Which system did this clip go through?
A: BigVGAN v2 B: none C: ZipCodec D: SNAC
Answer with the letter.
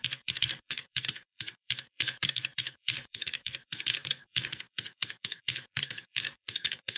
D